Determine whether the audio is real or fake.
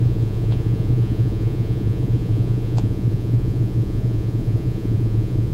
fake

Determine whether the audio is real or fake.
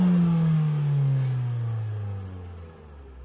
real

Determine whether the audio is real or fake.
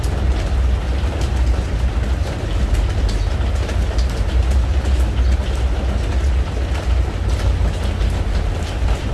real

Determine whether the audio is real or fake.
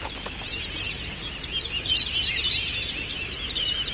fake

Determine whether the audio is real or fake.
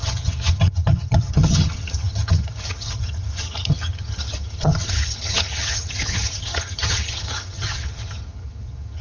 fake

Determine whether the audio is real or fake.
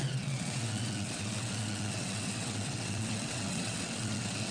fake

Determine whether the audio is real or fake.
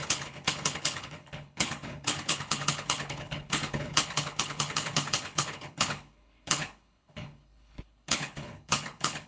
fake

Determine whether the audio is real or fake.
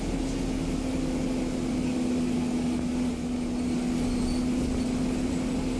real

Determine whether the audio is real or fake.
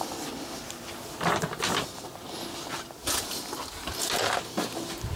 real